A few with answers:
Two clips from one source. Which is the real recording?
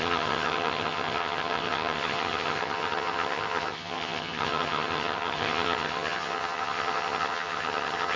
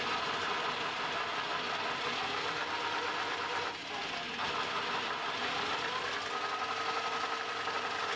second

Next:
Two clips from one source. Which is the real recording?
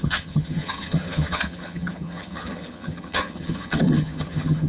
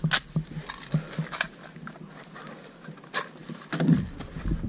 second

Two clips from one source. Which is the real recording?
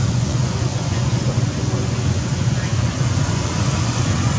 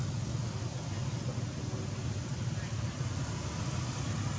second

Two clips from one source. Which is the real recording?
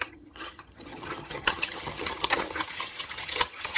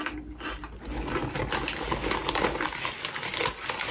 second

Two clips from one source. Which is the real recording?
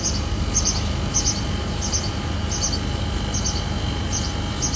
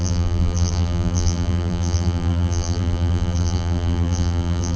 first